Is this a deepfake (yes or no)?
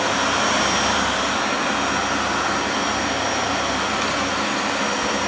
no